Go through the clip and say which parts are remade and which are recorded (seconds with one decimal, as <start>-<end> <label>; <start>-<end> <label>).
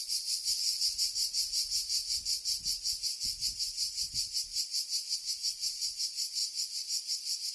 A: 0.0-1.8 remade; 1.8-3.5 recorded; 3.5-4.5 remade; 4.5-5.3 recorded; 5.3-6.4 remade; 6.4-7.5 recorded